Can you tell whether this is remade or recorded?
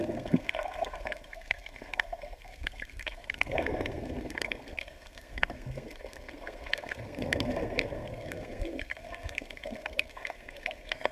remade